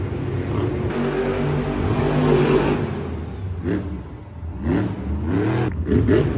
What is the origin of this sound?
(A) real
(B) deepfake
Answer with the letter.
A